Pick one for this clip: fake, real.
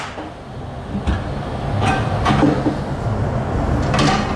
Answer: real